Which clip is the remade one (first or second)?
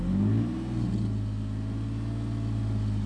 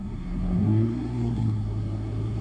second